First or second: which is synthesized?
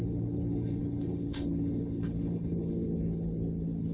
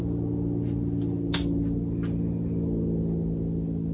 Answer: first